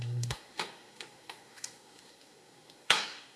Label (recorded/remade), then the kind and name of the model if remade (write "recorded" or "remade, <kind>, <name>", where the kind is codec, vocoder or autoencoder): remade, codec, SNAC